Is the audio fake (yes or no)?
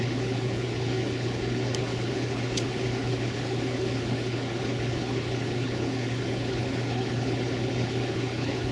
yes